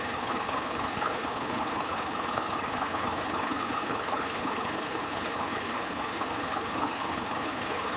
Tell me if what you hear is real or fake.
fake